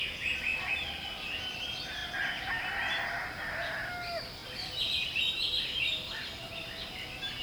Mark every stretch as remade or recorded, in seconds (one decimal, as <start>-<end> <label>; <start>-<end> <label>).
0.0-7.4 recorded